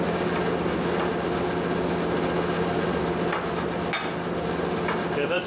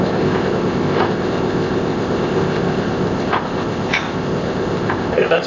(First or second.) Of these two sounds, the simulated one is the second